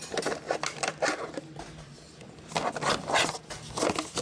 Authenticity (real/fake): real